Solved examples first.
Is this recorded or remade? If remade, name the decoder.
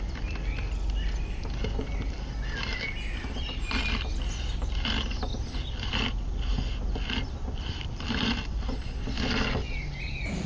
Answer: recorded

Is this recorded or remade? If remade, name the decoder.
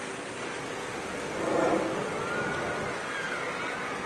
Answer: recorded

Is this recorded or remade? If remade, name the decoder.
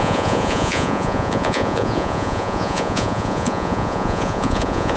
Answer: remade, vocoder, Vocos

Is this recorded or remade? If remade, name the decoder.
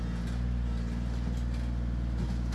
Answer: recorded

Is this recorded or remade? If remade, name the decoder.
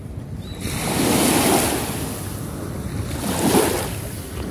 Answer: recorded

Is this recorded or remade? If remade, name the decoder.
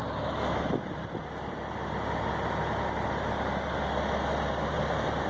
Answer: recorded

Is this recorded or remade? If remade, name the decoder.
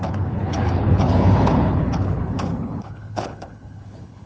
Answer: remade, codec, HILCodec